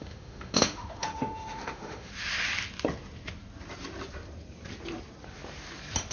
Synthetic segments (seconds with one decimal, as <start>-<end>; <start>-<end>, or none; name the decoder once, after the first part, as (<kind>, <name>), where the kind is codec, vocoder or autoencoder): 0.0-2.1 (autoencoder, DAC-VAE)